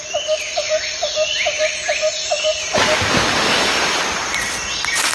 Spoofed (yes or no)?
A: no